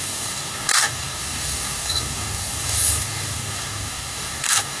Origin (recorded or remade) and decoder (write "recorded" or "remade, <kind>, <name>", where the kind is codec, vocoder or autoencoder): remade, codec, DAC